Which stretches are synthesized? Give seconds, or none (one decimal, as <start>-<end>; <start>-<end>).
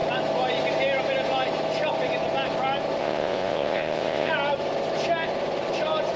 3.0-4.3